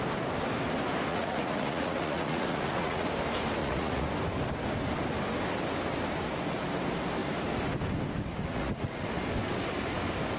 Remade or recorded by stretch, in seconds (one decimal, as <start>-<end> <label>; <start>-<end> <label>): 0.0-1.1 recorded; 1.1-3.1 remade; 3.1-3.6 recorded; 3.6-4.1 remade; 4.1-8.5 recorded; 8.5-9.2 remade; 9.2-10.4 recorded